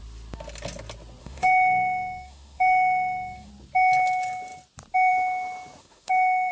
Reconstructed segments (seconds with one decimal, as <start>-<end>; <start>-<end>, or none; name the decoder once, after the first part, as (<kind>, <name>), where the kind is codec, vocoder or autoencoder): 1.2-3.5 (autoencoder, DAC-VAE); 5.8-6.5